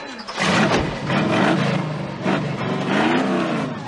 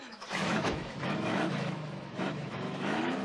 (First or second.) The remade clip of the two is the second